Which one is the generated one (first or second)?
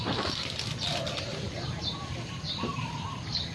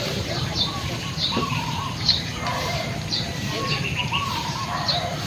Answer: second